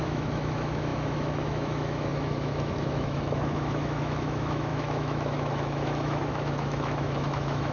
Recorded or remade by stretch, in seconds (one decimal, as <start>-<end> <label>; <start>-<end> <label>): 0.0-7.7 remade